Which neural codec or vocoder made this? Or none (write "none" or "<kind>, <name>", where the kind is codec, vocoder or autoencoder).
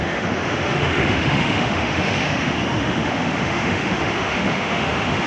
autoencoder, DAC-VAE